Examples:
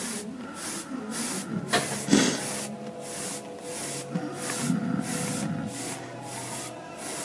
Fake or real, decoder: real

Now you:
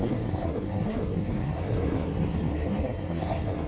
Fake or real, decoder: fake, codec, SNAC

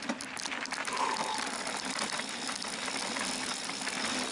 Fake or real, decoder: real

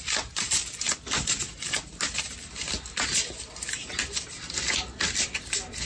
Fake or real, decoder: real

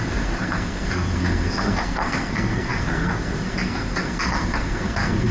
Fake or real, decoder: fake, codec, SNAC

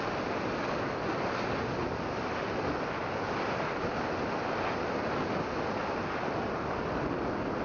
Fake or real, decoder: real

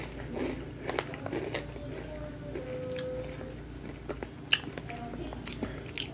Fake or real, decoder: real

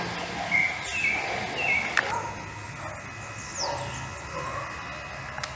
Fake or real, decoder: real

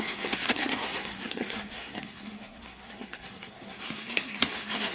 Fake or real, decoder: fake, codec, SNAC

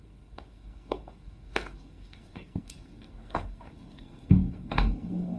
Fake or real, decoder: fake, codec, SNAC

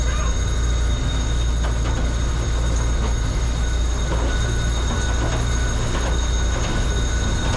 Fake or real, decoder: real